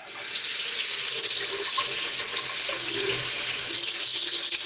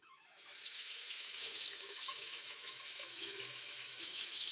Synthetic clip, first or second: second